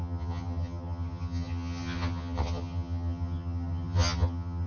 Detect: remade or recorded remade